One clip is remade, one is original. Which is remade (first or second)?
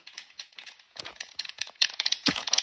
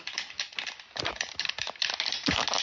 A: first